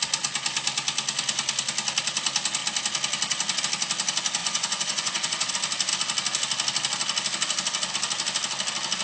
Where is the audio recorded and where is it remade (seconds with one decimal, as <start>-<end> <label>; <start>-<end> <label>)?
0.0-4.4 recorded; 4.4-5.5 remade; 5.5-9.0 recorded